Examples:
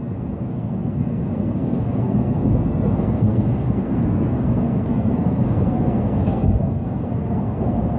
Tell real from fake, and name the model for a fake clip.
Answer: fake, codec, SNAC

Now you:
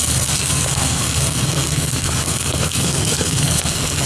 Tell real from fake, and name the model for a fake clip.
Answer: fake, codec, SNAC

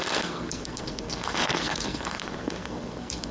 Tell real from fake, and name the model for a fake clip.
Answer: fake, codec, SNAC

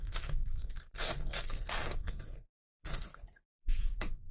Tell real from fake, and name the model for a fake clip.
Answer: fake, codec, SNAC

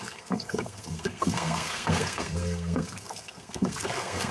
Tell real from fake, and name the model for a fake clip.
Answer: fake, codec, SNAC